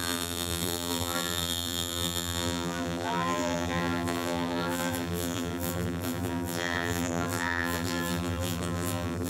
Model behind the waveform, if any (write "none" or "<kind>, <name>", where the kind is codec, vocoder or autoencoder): vocoder, BigVGAN v2